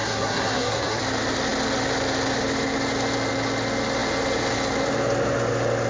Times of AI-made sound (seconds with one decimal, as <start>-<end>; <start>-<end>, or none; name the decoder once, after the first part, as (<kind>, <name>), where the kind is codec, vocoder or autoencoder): 0.0-1.0 (codec, SNAC)